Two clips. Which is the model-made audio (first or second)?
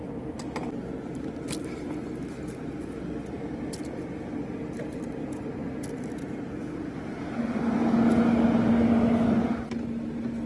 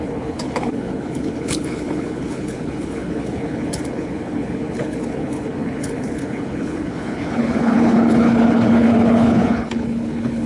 second